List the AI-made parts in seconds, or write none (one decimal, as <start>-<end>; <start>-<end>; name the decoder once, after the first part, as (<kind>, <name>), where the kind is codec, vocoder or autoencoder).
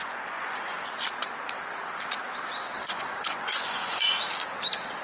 0.0-0.9 (vocoder, Vocos); 2.8-4.2